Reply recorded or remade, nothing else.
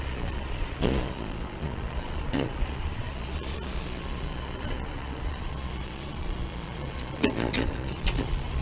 remade